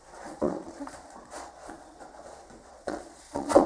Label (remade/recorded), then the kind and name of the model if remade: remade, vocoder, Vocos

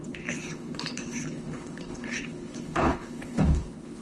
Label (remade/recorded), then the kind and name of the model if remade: remade, codec, HILCodec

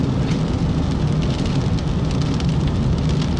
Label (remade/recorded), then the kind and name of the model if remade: recorded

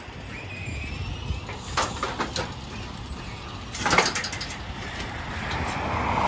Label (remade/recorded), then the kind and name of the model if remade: recorded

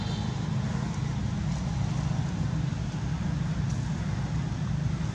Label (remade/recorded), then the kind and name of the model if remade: recorded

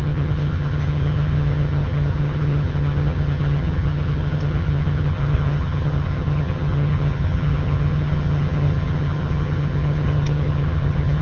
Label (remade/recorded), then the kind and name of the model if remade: remade, vocoder, HiFi-GAN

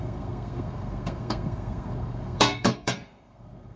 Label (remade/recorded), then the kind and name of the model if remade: remade, codec, SNAC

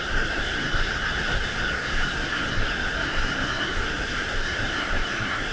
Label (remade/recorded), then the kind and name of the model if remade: remade, codec, SNAC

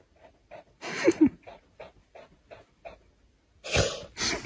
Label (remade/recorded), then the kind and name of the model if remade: recorded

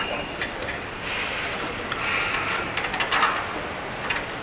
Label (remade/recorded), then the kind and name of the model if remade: remade, vocoder, BigVGAN v2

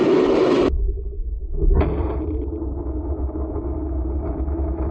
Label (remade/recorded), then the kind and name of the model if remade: recorded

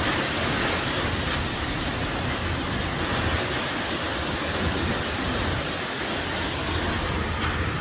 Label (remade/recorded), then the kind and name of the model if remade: recorded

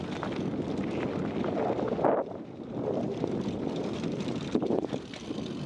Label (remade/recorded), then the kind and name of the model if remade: recorded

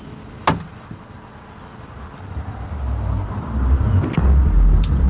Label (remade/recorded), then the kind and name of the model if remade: recorded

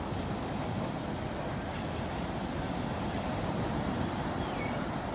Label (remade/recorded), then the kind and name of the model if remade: remade, vocoder, BigVGAN v2